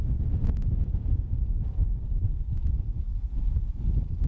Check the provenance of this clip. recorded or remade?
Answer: remade